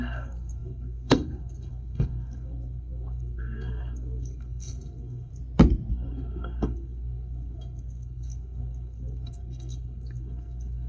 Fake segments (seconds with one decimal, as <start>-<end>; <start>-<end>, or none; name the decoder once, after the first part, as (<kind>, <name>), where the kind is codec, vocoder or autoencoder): 0.0-5.3 (codec, SNAC); 5.9-10.9